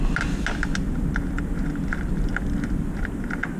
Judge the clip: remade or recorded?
recorded